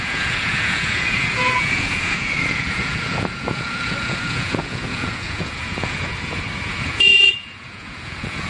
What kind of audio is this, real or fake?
fake